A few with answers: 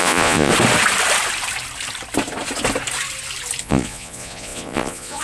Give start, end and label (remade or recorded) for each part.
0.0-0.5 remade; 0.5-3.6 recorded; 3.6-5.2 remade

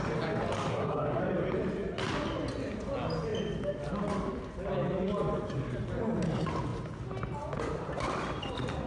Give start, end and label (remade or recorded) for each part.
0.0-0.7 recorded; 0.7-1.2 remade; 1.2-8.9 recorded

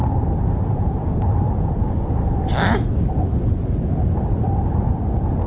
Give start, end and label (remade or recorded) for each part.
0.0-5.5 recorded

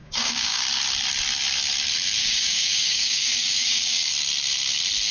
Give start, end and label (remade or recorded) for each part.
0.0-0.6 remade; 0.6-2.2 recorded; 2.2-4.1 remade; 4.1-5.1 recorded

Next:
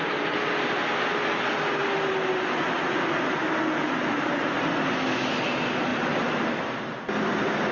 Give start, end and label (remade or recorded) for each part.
0.0-7.7 recorded

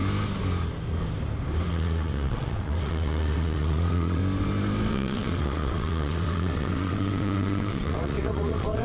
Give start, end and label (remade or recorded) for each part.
0.0-1.7 recorded; 1.7-4.2 remade; 4.2-4.9 recorded; 4.9-8.8 remade

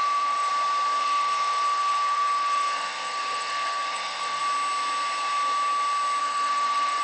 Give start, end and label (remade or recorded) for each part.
0.0-0.5 remade; 0.5-1.0 recorded; 1.0-4.4 remade; 4.4-6.2 recorded; 6.2-7.0 remade